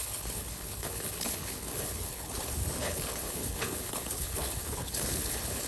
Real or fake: fake